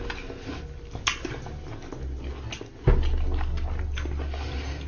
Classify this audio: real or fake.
real